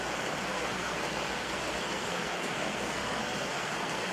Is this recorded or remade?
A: remade